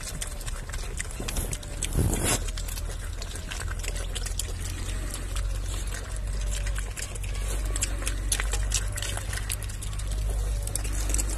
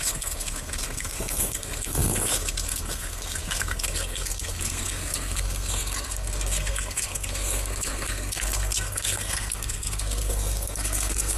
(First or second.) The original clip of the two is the first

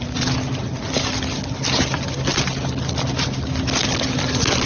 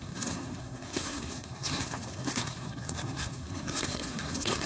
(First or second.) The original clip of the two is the first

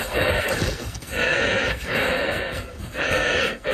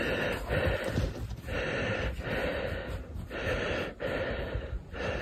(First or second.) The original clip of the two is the second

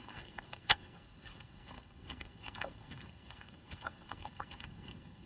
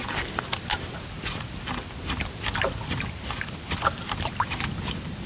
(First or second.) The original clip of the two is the second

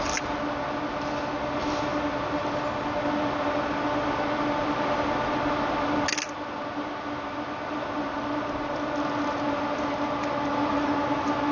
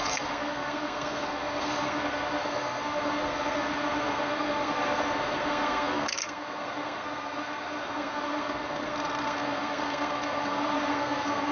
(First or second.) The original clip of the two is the first